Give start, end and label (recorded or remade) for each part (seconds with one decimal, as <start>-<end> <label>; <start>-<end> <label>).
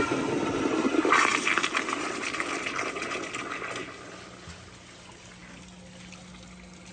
0.0-6.9 recorded